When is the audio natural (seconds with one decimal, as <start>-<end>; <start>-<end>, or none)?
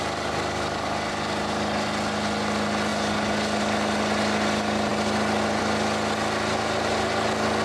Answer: 0.0-7.6